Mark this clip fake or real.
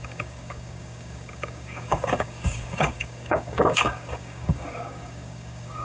fake